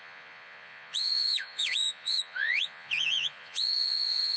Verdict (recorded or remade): remade